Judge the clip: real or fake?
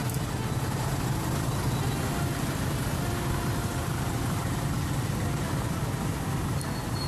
real